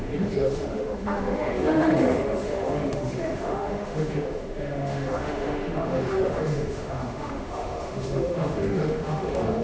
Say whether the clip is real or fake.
fake